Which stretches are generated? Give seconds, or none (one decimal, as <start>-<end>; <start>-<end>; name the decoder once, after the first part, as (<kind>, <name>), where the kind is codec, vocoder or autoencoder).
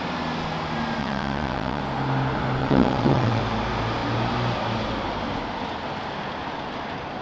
1.0-1.8 (vocoder, WaveNeXt); 2.6-3.4